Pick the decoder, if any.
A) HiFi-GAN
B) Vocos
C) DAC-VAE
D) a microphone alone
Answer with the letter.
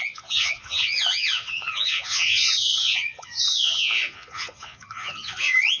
B